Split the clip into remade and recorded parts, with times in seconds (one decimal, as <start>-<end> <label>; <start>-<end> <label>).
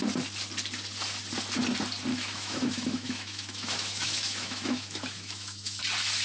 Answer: 0.0-2.1 recorded; 2.1-5.8 remade; 5.8-6.2 recorded